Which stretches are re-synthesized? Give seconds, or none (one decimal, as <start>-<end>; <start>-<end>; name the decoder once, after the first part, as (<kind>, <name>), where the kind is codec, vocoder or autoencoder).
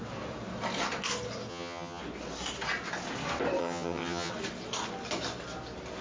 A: 1.5-2.0 (vocoder, HiFi-GAN); 3.6-4.3